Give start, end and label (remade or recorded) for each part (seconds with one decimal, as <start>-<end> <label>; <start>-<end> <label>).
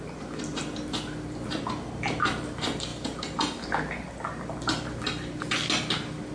0.0-6.3 recorded